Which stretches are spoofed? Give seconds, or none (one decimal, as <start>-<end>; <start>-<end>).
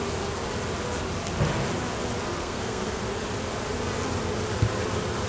2.4-3.0